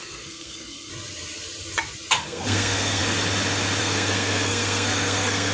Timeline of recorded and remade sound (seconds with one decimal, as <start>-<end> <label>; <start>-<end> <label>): 0.0-0.9 remade; 0.9-2.1 recorded; 2.1-3.0 remade; 3.0-3.8 recorded; 3.8-5.5 remade